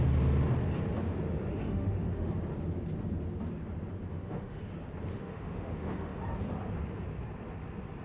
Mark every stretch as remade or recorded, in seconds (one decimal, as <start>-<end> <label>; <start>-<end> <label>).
0.0-1.5 recorded; 1.5-2.3 remade; 2.3-4.1 recorded; 4.1-4.6 remade; 4.6-5.1 recorded; 5.1-6.2 remade; 6.2-8.0 recorded